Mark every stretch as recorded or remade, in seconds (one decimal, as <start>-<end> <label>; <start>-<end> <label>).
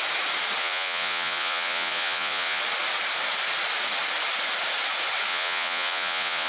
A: 0.0-0.6 recorded; 0.6-2.6 remade; 2.6-5.3 recorded; 5.3-6.5 remade